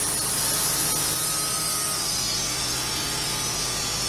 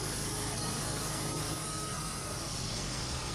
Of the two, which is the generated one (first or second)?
second